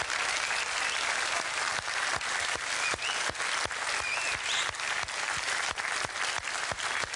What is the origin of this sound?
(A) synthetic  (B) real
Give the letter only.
B